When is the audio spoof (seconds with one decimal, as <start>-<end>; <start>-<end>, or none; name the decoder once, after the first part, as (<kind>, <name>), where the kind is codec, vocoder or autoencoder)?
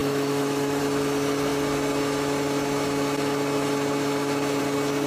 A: 0.0-0.8 (autoencoder, DAC-VAE)